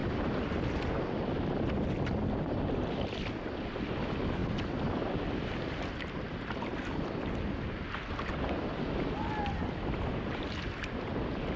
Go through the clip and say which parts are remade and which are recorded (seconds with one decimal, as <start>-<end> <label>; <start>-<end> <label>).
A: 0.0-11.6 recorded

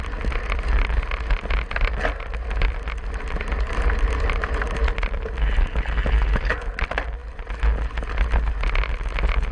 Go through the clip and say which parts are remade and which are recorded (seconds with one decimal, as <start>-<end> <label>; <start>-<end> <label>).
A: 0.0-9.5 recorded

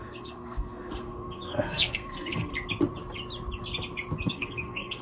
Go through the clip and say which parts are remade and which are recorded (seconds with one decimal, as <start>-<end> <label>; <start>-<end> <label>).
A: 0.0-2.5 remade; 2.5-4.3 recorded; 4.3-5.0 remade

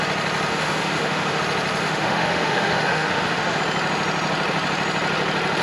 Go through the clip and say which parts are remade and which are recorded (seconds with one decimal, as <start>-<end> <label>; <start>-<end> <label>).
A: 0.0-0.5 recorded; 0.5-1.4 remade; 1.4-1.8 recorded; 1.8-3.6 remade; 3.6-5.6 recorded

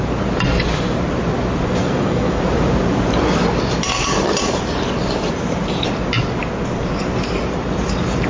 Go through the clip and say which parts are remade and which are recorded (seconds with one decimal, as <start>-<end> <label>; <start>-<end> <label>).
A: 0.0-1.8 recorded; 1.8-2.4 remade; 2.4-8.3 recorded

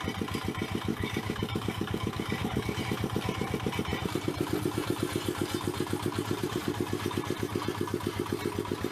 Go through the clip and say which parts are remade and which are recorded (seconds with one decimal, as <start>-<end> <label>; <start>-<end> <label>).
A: 0.0-0.9 recorded; 0.9-2.8 remade; 2.8-8.9 recorded